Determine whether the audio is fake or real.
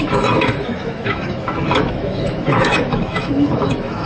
fake